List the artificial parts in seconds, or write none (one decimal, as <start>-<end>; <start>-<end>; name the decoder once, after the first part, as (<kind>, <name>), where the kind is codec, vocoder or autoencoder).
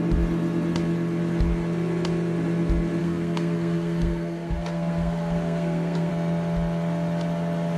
3.0-6.1 (codec, SNAC)